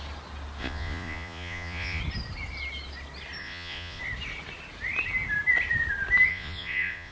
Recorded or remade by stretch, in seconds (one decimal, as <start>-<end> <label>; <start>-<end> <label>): 0.0-0.6 recorded; 0.6-2.0 remade; 2.0-3.4 recorded; 3.4-4.0 remade; 4.0-6.3 recorded; 6.3-7.1 remade